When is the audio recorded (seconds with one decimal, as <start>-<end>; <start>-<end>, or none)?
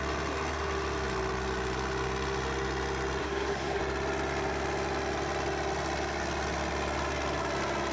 0.0-3.2; 3.8-7.9